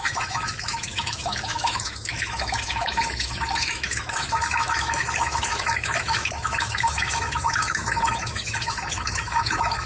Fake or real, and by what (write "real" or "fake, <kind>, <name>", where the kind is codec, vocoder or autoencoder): fake, autoencoder, DAC-VAE